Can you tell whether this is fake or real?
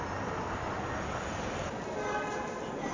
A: real